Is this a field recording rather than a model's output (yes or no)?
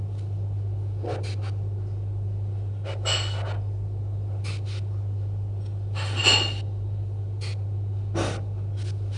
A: yes